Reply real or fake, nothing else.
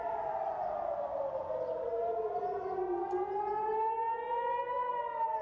real